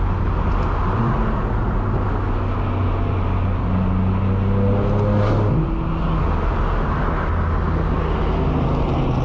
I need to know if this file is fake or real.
real